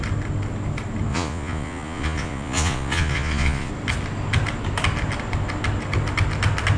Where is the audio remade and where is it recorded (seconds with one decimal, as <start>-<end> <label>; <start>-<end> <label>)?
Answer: 0.0-1.1 recorded; 1.1-3.7 remade; 3.7-6.8 recorded